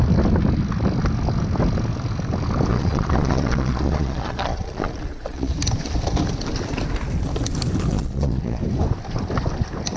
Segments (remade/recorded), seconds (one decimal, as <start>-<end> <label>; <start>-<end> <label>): 0.0-2.7 recorded; 2.7-5.5 remade; 5.5-7.9 recorded; 7.9-8.6 remade; 8.6-10.0 recorded